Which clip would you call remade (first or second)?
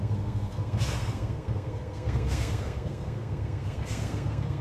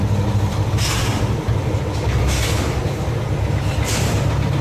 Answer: first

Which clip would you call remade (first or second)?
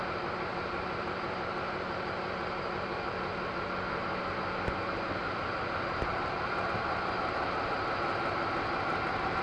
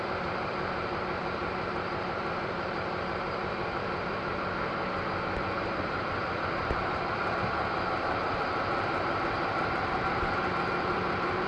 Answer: second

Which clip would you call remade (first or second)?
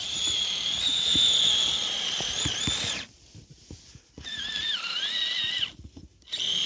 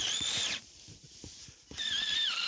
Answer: second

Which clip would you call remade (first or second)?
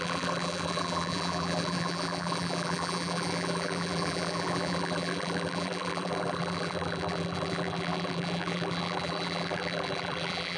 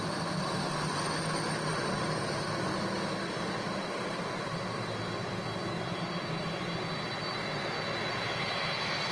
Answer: first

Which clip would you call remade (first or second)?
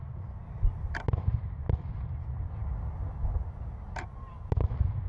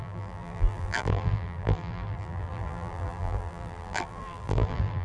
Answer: second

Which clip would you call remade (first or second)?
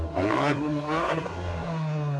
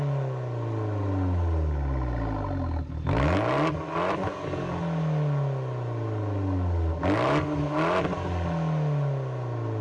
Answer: first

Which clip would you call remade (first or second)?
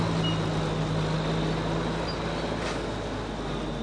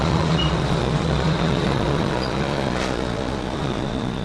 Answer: second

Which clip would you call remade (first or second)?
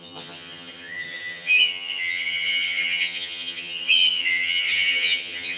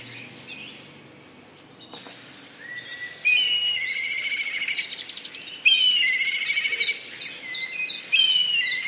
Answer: first